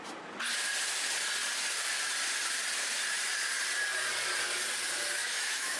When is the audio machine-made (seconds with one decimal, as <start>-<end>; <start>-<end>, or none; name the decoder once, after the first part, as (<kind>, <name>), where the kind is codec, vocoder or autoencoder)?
5.2-5.8 (autoencoder, DAC-VAE)